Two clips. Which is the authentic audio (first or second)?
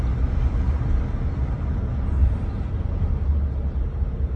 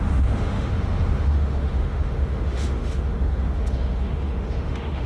first